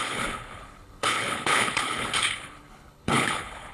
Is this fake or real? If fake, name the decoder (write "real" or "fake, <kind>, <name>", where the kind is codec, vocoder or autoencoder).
fake, codec, HILCodec